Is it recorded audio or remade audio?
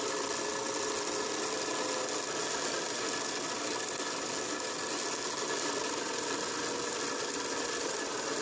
recorded